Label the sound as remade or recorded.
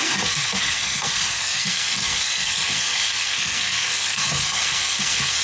remade